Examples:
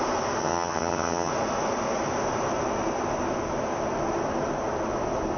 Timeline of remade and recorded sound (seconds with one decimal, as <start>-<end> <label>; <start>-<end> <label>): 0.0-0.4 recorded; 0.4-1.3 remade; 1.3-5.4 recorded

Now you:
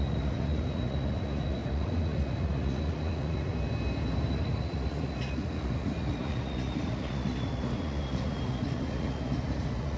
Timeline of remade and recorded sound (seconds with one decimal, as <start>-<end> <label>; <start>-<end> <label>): 0.0-3.5 remade; 3.5-4.3 recorded; 4.3-10.0 remade

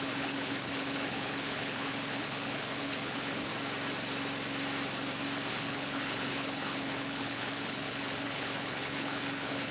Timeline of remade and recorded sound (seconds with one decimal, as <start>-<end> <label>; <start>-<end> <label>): 0.0-3.5 remade; 3.5-5.5 recorded; 5.5-9.7 remade

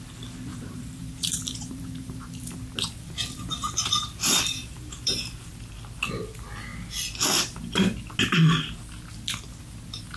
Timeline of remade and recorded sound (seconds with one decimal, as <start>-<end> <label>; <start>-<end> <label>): 0.0-0.5 recorded; 0.5-2.6 remade; 2.6-3.5 recorded; 3.5-5.5 remade; 5.5-10.2 recorded

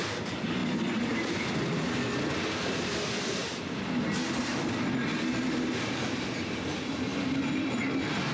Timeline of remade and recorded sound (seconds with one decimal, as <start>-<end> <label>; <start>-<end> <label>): 0.0-0.6 recorded; 0.6-2.6 remade; 2.6-3.4 recorded; 3.4-4.2 remade; 4.2-7.1 recorded; 7.1-7.8 remade; 7.8-8.3 recorded

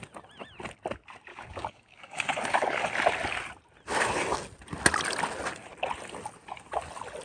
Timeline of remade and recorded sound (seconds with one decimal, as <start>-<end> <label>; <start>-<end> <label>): 0.0-1.3 recorded; 1.3-2.9 remade; 2.9-7.2 recorded